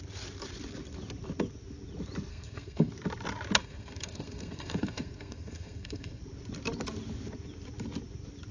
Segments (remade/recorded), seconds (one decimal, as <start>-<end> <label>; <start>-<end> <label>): 0.0-2.3 recorded; 2.3-2.9 remade; 2.9-3.6 recorded; 3.6-6.2 remade; 6.2-8.5 recorded